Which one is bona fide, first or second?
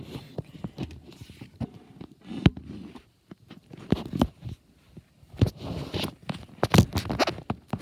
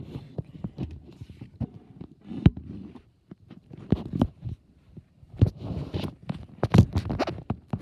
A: first